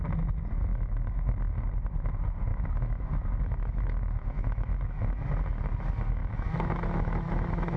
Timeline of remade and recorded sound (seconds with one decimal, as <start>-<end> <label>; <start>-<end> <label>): 0.0-0.7 recorded; 0.7-1.3 remade; 1.3-2.5 recorded; 2.5-5.2 remade; 5.2-6.2 recorded; 6.2-7.8 remade